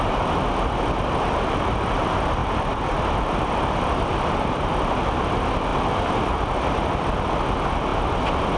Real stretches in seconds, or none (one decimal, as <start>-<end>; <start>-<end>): 0.0-2.4; 5.0-5.7; 6.3-8.6